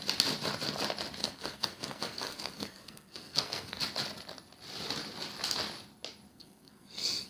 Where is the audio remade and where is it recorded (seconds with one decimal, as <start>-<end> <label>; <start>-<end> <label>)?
0.0-1.2 recorded; 1.2-3.8 remade; 3.8-6.3 recorded; 6.3-7.3 remade